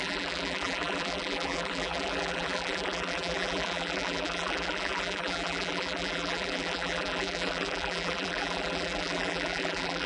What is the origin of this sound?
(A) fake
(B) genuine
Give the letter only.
A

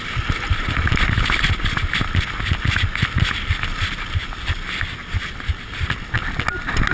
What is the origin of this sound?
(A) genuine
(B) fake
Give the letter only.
A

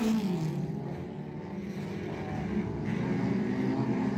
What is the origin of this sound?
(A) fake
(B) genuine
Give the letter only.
B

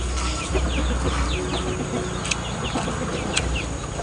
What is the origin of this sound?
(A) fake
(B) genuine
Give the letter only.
B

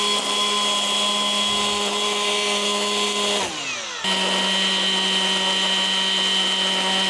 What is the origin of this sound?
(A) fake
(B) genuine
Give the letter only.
B